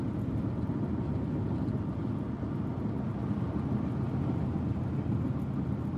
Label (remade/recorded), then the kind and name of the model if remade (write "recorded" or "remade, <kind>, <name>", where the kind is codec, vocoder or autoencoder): recorded